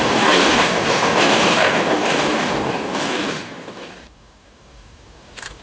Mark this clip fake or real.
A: fake